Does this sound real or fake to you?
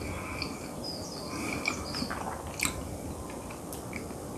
real